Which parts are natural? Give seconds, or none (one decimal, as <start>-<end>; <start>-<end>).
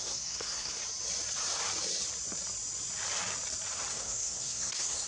0.8-3.9